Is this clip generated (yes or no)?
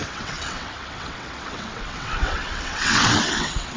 yes